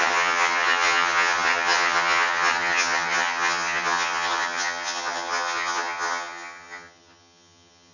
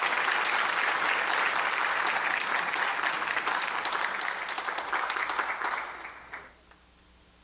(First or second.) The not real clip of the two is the first